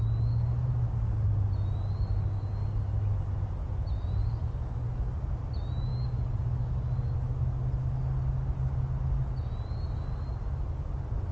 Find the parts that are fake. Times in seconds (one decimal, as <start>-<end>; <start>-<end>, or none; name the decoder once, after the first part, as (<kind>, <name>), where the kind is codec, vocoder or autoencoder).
none